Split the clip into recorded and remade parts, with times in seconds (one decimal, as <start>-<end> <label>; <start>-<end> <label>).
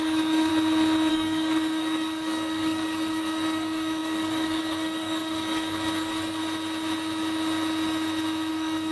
0.0-0.5 remade; 0.5-1.1 recorded; 1.1-6.4 remade; 6.4-8.5 recorded; 8.5-8.9 remade